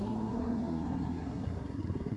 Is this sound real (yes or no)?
no